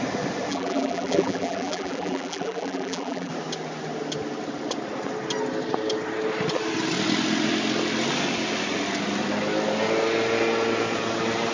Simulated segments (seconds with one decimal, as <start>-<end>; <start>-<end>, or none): 0.5-3.3